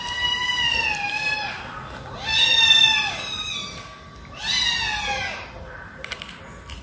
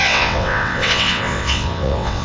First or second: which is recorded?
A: first